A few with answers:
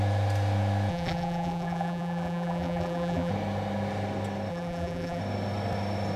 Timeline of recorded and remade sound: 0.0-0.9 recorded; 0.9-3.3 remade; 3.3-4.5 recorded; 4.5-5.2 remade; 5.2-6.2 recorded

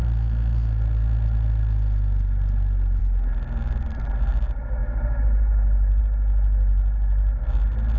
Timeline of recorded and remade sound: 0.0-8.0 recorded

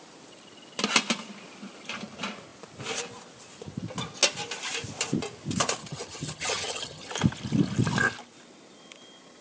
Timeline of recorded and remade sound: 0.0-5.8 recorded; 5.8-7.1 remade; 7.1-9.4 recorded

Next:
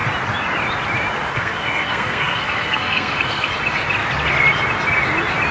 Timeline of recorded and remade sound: 0.0-1.3 recorded; 1.3-3.5 remade; 3.5-5.5 recorded

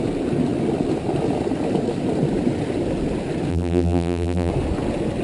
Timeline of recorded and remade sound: 0.0-3.5 recorded; 3.5-4.5 remade; 4.5-5.2 recorded